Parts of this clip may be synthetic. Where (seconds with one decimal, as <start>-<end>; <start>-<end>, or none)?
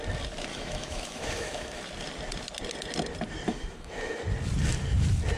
0.5-1.8; 3.5-4.2